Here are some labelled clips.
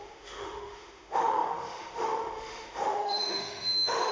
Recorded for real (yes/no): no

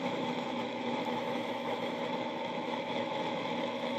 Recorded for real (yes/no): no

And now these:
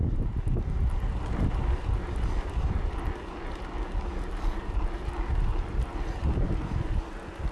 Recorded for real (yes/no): yes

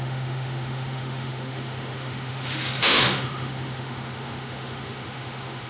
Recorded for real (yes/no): no